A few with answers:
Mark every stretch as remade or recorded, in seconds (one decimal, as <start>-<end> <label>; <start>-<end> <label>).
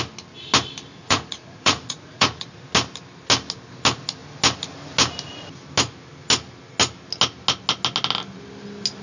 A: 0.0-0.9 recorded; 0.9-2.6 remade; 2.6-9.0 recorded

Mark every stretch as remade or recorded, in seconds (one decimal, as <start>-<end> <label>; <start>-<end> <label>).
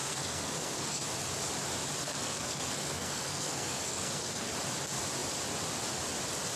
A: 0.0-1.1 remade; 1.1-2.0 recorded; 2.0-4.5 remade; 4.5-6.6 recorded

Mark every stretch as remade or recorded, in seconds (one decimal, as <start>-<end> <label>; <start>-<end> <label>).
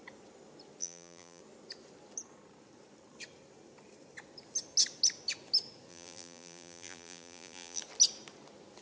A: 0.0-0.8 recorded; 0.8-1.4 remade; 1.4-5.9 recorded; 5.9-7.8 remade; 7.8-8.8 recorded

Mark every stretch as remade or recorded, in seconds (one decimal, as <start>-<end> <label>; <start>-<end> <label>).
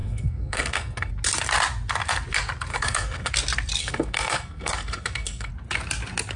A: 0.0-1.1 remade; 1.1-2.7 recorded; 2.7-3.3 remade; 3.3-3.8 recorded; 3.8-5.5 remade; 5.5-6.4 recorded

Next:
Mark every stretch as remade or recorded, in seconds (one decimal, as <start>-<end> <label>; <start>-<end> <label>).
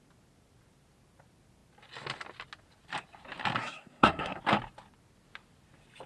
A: 0.0-3.6 recorded; 3.6-4.4 remade; 4.4-6.1 recorded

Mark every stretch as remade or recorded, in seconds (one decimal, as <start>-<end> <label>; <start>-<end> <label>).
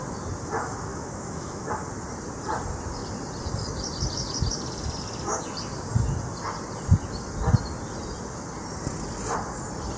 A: 0.0-0.9 recorded; 0.9-1.7 remade; 1.7-10.0 recorded